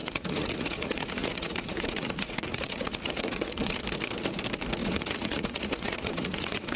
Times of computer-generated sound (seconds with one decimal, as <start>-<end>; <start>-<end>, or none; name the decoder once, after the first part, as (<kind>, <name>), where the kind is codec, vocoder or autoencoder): 0.0-3.8 (vocoder, Vocos); 4.8-6.8